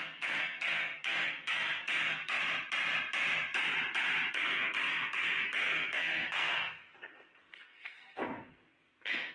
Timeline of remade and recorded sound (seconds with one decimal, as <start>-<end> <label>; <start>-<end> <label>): 0.0-2.4 remade; 2.4-4.3 recorded; 4.3-9.3 remade

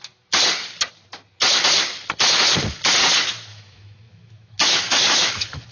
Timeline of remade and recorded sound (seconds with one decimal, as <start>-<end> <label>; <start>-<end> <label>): 0.0-3.5 recorded; 3.5-5.7 remade